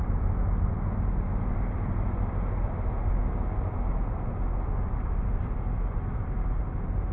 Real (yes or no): yes